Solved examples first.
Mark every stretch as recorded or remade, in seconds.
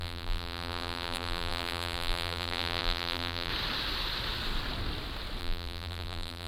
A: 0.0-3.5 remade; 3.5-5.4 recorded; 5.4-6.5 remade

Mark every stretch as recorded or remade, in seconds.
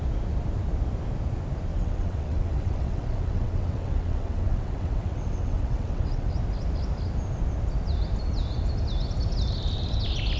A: 0.0-1.7 recorded; 1.7-6.3 remade; 6.3-10.4 recorded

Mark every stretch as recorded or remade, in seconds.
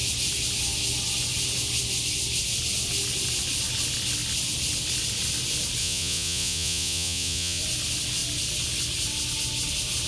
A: 0.0-5.8 recorded; 5.8-7.6 remade; 7.6-10.1 recorded